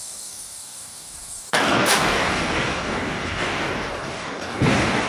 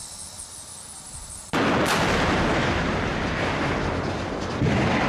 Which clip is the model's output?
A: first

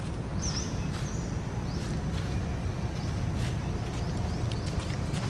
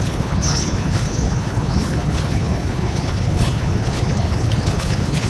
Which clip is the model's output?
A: second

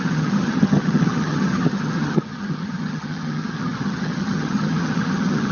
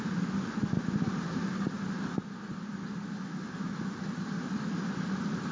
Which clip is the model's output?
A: first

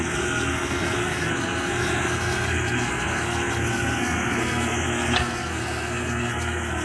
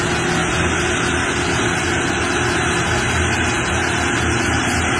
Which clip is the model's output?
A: first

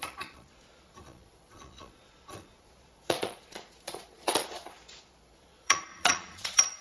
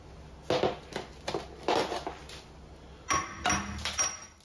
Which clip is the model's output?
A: first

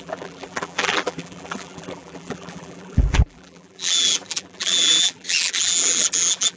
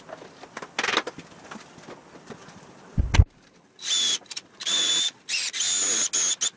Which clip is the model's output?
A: first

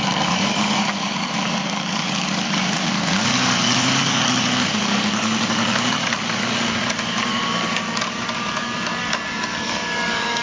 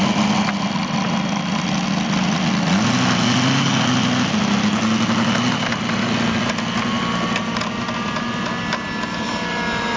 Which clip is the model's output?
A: first